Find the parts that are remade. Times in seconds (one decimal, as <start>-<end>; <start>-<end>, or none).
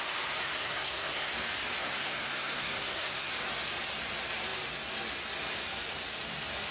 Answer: 0.4-1.3; 1.8-3.3